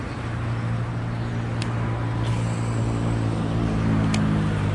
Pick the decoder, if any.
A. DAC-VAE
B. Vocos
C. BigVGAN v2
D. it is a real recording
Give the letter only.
D